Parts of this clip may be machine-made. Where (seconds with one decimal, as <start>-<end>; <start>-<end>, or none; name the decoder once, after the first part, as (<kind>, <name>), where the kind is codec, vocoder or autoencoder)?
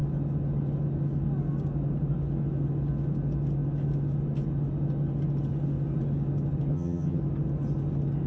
6.7-7.2 (vocoder, HiFi-GAN)